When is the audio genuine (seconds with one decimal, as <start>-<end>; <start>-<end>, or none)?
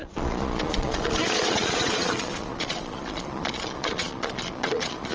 none